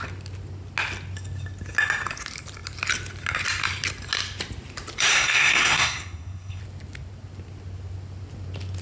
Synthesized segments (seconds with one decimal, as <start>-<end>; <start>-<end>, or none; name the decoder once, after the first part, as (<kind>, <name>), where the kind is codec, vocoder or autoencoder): 5.1-6.6 (codec, SNAC)